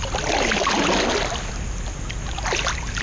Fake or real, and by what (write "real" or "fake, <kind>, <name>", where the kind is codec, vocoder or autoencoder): real